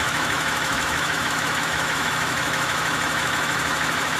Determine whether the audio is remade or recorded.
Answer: remade